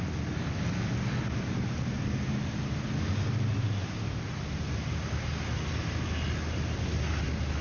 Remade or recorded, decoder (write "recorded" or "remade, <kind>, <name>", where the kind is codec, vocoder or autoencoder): recorded